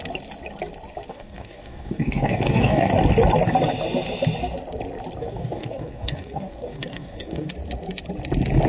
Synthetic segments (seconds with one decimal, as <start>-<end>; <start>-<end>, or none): 1.1-2.9; 5.2-7.5